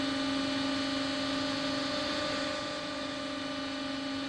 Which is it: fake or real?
real